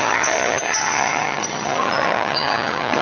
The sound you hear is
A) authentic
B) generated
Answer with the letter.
B